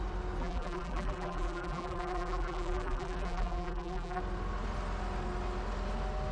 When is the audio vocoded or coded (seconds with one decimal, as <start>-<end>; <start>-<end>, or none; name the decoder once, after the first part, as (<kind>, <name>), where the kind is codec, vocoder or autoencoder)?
0.4-4.2 (vocoder, BigVGAN v2)